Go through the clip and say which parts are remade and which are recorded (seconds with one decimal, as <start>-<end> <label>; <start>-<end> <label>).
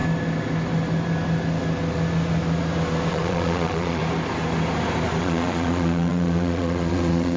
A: 0.0-3.1 recorded; 3.1-4.0 remade; 4.0-5.2 recorded; 5.2-7.4 remade